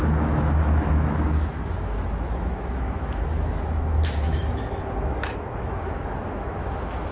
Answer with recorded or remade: remade